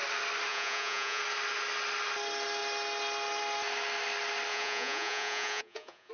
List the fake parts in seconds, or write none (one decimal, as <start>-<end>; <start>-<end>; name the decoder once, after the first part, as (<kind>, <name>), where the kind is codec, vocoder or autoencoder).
0.5-1.2 (vocoder, Vocos); 4.5-6.1

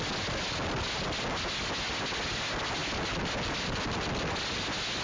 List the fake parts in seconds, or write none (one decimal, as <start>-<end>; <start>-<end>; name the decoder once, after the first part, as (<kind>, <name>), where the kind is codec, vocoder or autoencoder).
none

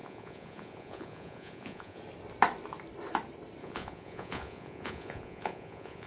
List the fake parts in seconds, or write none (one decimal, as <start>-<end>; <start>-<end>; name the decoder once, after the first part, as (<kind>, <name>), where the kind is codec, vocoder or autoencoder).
0.0-2.0 (vocoder, Vocos); 3.6-6.1

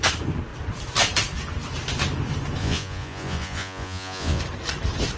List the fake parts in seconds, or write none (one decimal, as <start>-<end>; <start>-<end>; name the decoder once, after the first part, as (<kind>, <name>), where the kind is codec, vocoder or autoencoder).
2.6-4.4 (vocoder, Vocos)

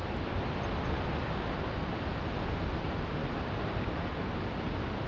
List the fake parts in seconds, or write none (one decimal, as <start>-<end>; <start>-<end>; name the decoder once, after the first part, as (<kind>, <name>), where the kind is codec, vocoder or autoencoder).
none